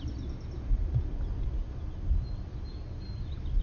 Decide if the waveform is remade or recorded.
recorded